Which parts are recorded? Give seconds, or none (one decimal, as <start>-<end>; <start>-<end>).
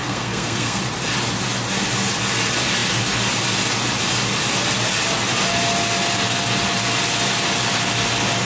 0.8-8.5